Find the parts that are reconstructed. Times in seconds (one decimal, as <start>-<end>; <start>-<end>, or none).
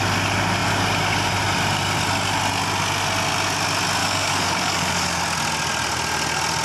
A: 4.0-5.2